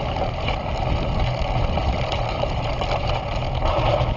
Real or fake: real